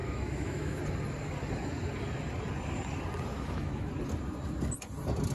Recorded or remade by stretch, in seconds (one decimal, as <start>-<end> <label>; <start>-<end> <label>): 0.0-0.8 remade; 0.8-3.3 recorded; 3.3-3.9 remade; 3.9-5.3 recorded